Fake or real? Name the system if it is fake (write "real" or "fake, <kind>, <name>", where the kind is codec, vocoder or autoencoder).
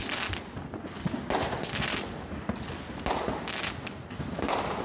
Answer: real